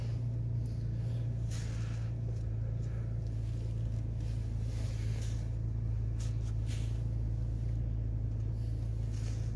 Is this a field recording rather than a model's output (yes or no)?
yes